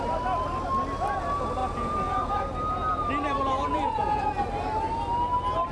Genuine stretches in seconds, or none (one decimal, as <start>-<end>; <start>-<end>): 0.0-1.6; 2.3-3.6; 4.2-5.7